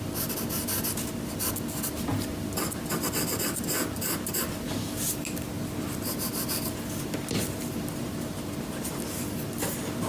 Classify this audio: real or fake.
real